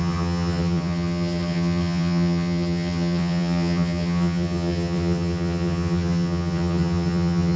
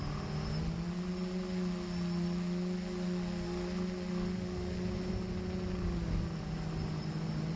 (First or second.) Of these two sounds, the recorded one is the second